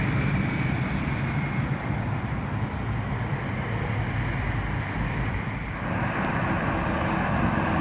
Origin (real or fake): real